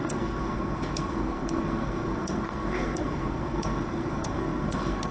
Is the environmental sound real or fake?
fake